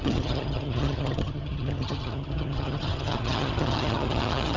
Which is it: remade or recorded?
remade